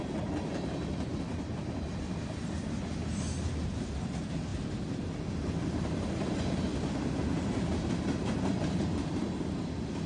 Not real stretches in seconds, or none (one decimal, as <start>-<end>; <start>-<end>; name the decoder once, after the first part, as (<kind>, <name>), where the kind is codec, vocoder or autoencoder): none